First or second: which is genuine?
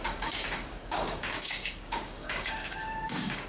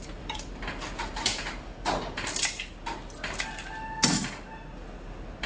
second